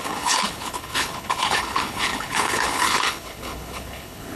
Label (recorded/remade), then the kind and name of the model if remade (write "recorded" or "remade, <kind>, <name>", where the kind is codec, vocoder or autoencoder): remade, codec, HILCodec